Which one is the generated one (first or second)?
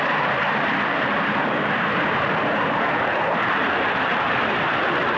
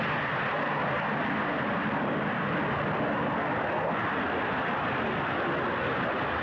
first